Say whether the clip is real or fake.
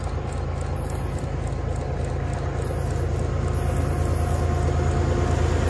real